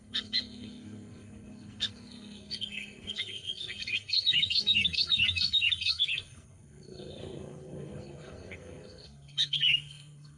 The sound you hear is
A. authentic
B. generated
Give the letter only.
B